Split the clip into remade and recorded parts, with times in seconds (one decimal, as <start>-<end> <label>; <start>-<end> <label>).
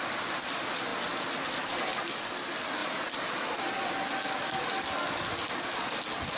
0.0-2.8 recorded; 2.8-3.6 remade; 3.6-6.4 recorded